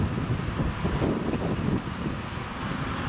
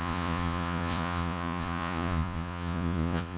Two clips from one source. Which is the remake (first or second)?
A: second